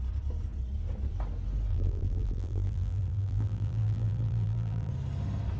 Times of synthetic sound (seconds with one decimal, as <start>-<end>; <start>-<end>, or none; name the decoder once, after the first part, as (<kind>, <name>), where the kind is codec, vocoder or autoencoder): 1.7-4.9 (vocoder, BigVGAN v2)